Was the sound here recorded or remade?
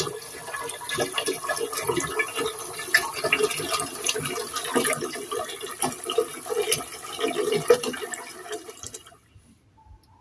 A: recorded